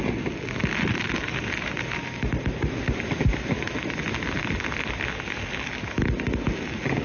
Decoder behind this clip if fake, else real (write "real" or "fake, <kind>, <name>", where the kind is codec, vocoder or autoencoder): real